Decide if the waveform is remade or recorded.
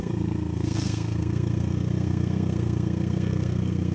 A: remade